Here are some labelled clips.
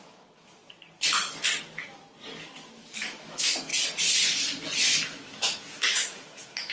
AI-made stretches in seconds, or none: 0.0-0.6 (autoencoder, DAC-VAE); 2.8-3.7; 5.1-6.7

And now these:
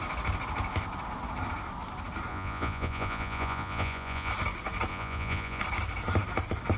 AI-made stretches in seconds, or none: 2.3-4.3 (vocoder, Vocos); 4.9-5.6

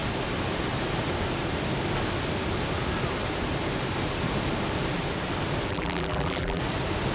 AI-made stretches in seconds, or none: 5.7-6.6 (vocoder, BigVGAN v2)

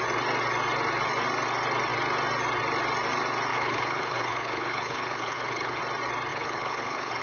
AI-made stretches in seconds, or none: 3.5-5.8 (codec, HILCodec); 6.3-7.2